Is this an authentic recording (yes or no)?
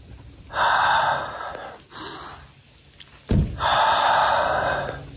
yes